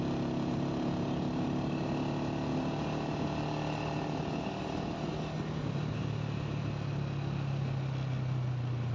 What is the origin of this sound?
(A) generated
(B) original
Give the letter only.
B